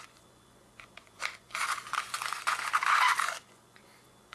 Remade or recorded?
remade